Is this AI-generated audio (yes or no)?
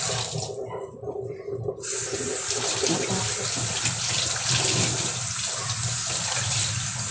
no